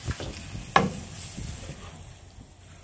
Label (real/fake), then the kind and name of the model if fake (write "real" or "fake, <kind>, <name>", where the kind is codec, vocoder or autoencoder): real